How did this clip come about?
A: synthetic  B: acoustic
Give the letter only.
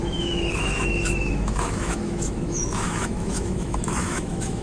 A